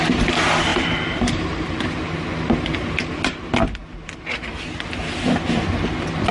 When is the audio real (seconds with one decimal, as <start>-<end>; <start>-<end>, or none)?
0.0-0.7; 1.8-6.3